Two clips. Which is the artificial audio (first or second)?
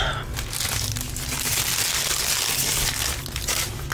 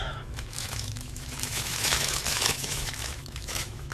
second